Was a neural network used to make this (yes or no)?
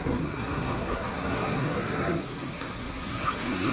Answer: yes